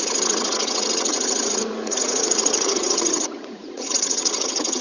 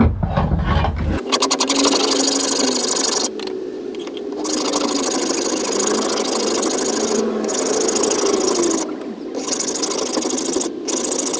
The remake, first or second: first